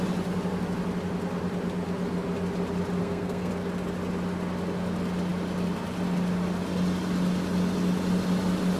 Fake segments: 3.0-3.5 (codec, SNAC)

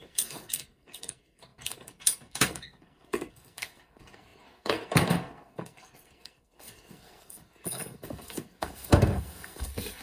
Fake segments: 0.0-10.0 (codec, SNAC)

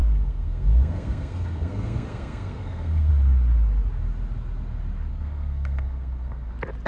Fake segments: 0.0-3.1 (codec, SNAC); 5.1-6.5

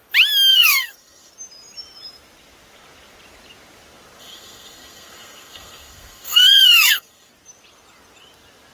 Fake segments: 0.5-1.3 (codec, SNAC); 4.2-7.3

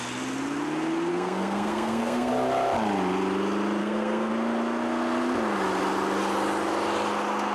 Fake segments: 1.1-2.3 (codec, SNAC); 3.8-4.3

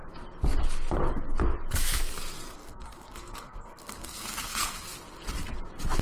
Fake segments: 2.5-4.8 (codec, SNAC)

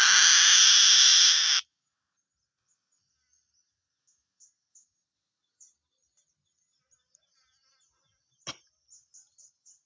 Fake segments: none